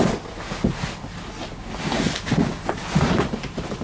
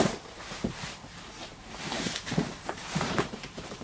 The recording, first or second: first